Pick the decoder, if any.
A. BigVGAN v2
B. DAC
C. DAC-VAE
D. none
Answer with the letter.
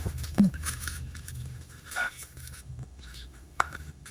C